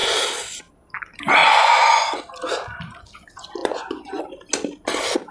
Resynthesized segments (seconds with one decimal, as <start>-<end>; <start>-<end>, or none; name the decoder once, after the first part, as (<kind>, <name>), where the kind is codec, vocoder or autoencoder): 1.4-2.2 (vocoder, Vocos); 3.6-4.2